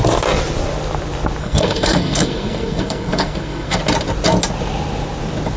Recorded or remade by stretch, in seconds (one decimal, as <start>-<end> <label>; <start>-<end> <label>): 0.0-1.4 recorded; 1.4-3.8 remade; 3.8-5.6 recorded